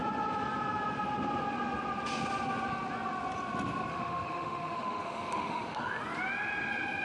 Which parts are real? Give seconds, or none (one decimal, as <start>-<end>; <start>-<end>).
0.0-3.9; 6.0-7.0